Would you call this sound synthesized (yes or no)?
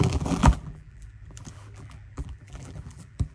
yes